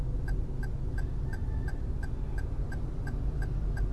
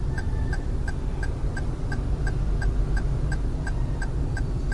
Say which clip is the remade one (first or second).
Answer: second